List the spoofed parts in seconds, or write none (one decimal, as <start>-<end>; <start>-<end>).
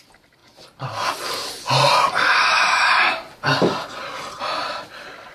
none